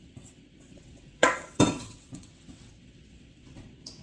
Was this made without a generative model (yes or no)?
no